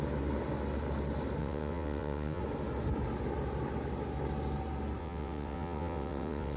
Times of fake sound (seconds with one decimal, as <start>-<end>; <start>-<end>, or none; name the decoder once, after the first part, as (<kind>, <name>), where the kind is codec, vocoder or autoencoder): 1.4-2.4 (vocoder, WaveNeXt); 5.0-6.6